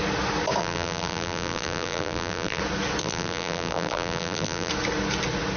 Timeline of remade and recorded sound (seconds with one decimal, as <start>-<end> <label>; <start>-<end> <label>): 0.0-0.6 recorded; 0.6-2.6 remade; 2.6-3.0 recorded; 3.0-4.7 remade; 4.7-5.6 recorded